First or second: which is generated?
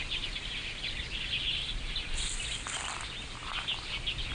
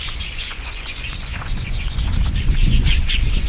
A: second